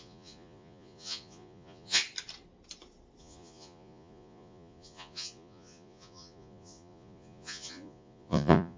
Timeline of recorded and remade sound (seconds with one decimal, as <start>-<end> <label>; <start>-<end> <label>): 0.0-2.0 remade; 2.0-3.2 recorded; 3.2-8.8 remade